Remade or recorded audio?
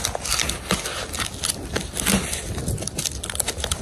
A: recorded